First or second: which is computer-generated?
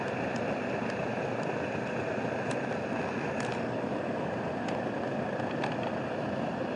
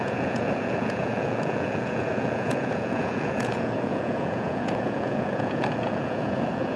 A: second